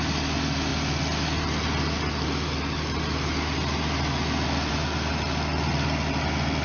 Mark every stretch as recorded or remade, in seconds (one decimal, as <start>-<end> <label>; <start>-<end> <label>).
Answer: 0.0-6.6 recorded